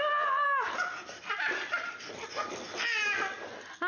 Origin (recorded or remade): recorded